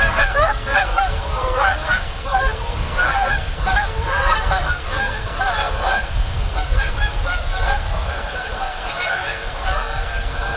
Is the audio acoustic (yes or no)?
no